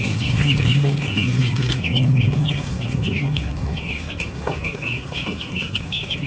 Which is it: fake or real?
fake